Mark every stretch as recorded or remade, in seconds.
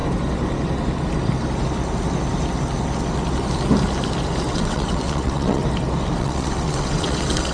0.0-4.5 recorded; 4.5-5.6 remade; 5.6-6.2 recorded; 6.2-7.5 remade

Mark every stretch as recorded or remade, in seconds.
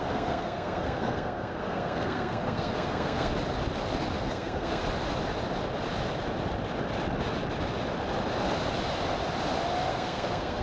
0.0-3.3 remade; 3.3-4.2 recorded; 4.2-4.8 remade; 4.8-9.9 recorded; 9.9-10.6 remade